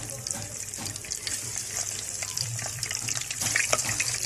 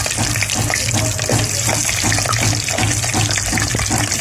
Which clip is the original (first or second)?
second